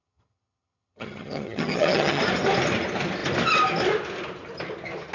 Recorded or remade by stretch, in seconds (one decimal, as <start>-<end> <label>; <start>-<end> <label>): 0.0-2.2 remade; 2.2-5.1 recorded